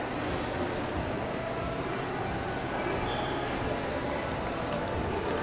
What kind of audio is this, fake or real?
real